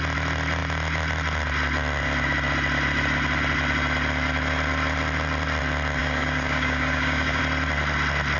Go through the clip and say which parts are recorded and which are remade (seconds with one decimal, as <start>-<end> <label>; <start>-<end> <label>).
0.0-6.0 recorded; 6.0-7.4 remade; 7.4-8.4 recorded